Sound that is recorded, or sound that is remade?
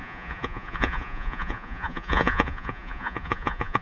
remade